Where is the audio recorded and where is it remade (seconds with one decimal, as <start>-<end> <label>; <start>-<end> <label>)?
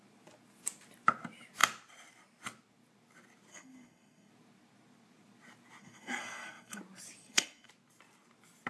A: 0.0-3.5 recorded; 3.5-4.3 remade; 4.3-5.8 recorded; 5.8-6.8 remade; 6.8-7.2 recorded; 7.2-7.7 remade; 7.7-8.7 recorded